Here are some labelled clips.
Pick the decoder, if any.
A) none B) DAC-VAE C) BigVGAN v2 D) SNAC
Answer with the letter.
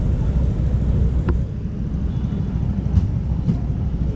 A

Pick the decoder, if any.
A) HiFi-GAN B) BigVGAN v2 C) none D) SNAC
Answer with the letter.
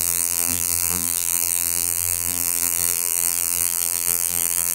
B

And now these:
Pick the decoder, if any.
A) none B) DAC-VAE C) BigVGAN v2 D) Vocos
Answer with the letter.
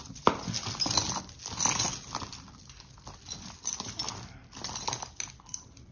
A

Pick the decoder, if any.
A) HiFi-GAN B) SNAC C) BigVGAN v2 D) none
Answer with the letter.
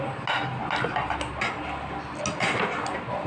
D